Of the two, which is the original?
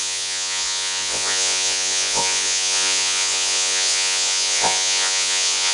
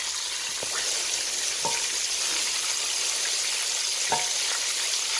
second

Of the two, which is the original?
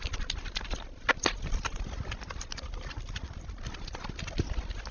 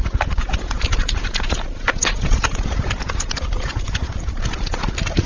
first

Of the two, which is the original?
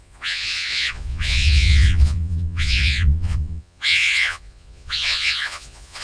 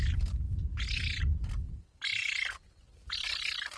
second